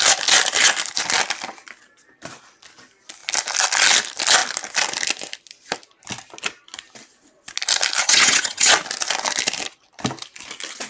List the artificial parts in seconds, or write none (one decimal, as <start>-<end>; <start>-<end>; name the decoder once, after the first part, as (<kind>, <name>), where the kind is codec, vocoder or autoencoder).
8.0-8.7 (vocoder, HiFi-GAN)